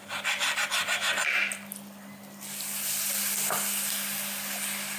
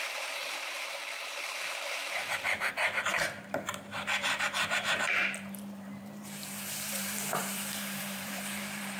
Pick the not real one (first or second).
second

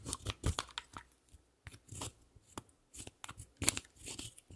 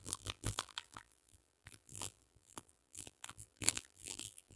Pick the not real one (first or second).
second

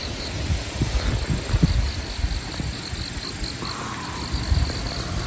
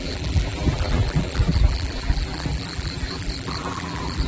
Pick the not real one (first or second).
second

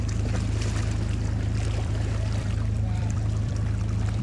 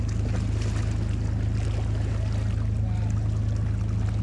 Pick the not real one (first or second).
first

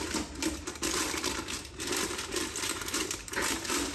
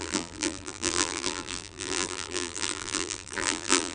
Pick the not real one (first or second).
second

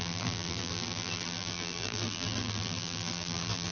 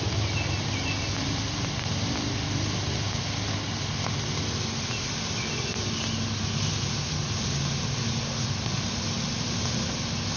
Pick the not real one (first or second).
first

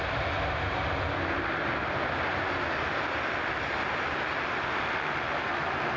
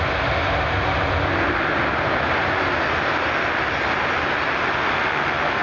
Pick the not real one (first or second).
first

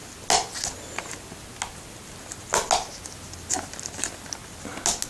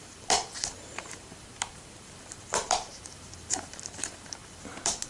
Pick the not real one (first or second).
second